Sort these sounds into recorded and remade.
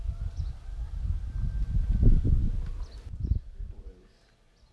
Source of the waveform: recorded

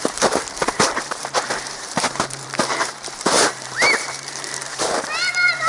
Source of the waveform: remade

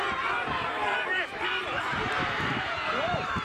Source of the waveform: remade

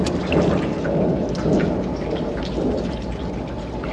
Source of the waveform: recorded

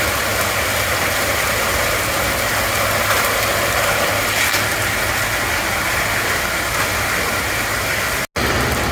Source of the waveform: recorded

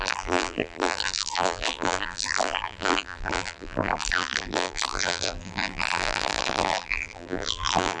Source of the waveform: remade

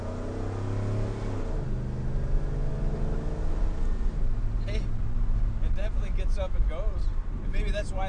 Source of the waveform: recorded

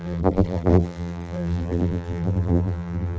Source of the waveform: remade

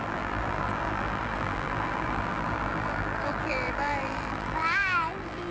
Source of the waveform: remade